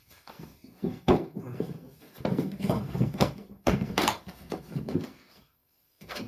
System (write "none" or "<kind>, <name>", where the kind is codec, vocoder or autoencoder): codec, SNAC